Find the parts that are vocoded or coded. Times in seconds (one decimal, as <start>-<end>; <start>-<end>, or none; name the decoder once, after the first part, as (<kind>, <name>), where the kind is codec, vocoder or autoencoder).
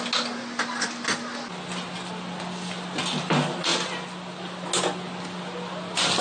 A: none